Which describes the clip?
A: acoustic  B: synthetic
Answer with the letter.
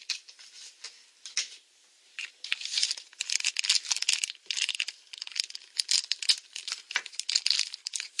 A